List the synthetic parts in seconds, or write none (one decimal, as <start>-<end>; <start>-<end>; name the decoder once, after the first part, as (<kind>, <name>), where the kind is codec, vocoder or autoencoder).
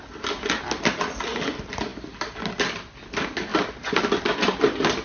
none